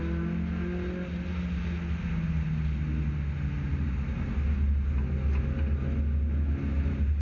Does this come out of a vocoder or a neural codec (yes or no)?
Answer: no